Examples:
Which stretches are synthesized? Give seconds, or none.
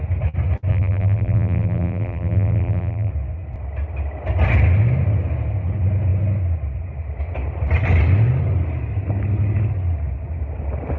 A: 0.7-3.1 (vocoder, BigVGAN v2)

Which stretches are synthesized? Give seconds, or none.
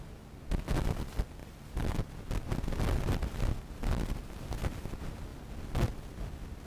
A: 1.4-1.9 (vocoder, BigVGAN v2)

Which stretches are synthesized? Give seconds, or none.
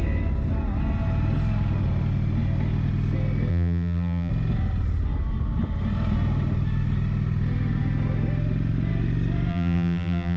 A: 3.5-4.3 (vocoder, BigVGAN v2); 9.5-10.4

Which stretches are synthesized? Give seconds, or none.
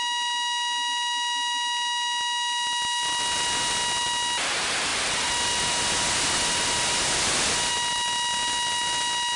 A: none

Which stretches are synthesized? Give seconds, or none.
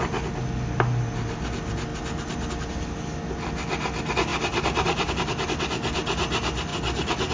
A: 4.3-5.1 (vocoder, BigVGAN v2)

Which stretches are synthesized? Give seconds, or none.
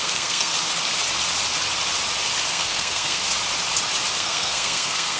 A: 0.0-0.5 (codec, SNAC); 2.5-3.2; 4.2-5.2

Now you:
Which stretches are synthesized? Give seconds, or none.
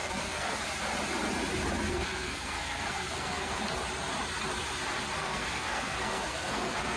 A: 0.0-0.6 (codec, SNAC); 1.9-3.6; 5.2-7.0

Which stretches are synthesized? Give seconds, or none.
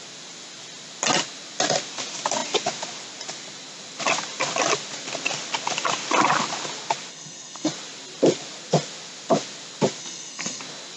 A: 7.1-7.7 (codec, SNAC); 10.0-10.6